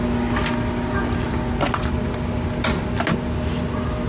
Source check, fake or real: real